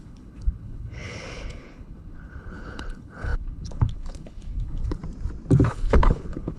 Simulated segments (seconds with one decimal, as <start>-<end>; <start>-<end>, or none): 0.0-5.0; 5.7-6.6